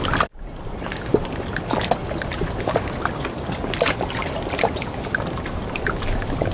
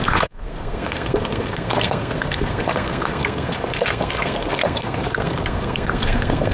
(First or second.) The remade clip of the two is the second